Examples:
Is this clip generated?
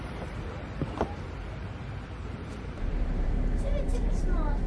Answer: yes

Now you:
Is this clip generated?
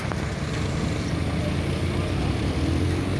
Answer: no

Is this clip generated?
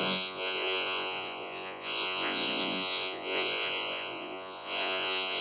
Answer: yes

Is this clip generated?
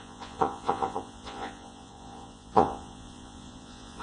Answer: yes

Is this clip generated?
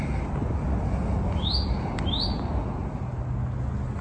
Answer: no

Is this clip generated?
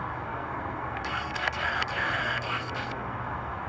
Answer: yes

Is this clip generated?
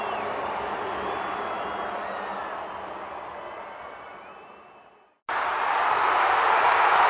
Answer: no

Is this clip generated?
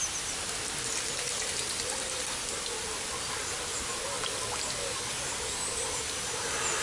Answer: no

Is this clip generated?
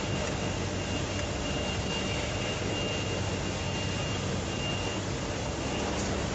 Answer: no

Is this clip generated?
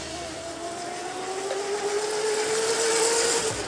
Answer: no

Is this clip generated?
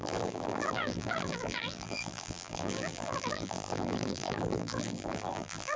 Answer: yes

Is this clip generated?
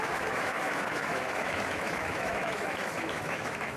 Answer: yes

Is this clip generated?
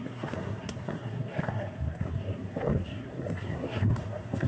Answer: yes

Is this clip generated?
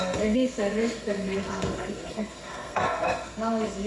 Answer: yes